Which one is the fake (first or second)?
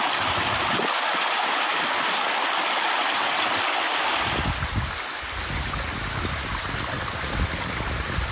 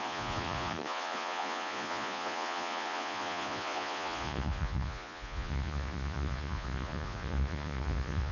second